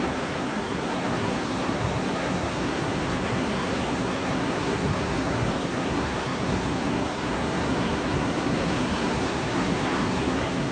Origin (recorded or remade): remade